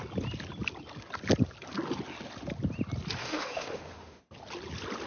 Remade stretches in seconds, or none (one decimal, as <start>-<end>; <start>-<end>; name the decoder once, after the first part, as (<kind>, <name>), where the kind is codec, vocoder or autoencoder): 3.2-4.2 (autoencoder, DAC-VAE)